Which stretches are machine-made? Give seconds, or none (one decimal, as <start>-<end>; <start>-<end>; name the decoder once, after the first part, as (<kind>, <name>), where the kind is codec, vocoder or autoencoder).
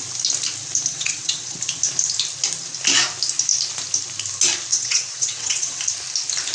0.9-1.6 (vocoder, WaveNeXt); 4.7-5.8